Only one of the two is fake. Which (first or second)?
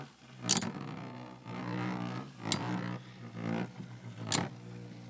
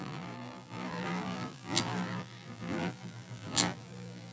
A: second